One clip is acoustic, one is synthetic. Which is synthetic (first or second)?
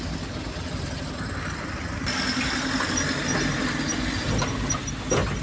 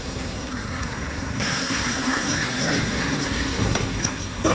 second